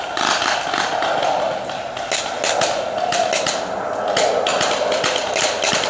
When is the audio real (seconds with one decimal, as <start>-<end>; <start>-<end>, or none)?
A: 0.0-5.9